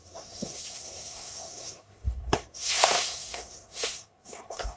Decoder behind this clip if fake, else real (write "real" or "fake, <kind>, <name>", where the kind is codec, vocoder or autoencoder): fake, codec, SNAC